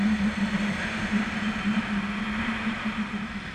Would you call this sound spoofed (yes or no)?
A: no